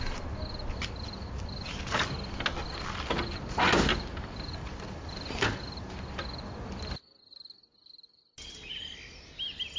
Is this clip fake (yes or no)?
no